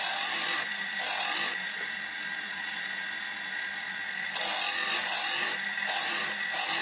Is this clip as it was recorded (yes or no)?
yes